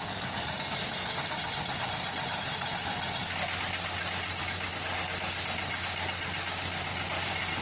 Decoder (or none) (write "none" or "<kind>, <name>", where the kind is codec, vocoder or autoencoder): none